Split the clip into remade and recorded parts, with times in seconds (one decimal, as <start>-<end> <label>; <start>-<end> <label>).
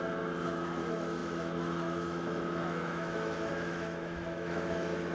0.0-5.1 remade